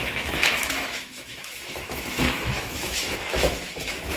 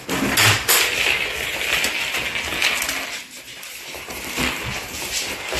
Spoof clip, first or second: first